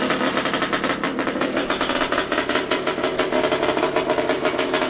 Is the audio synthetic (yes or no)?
no